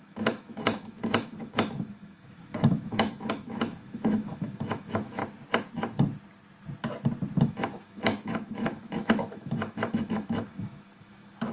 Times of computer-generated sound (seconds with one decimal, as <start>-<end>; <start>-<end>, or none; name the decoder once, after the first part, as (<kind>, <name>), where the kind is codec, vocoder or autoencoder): 0.0-5.2 (autoencoder, DAC-VAE); 7.4-11.5